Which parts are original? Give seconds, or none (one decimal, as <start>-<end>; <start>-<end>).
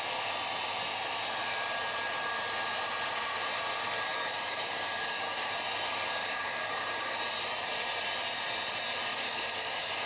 0.0-4.1; 5.5-6.2; 7.2-9.1; 9.7-10.1